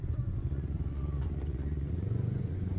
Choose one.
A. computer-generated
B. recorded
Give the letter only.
A